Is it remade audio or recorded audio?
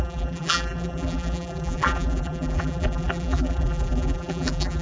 remade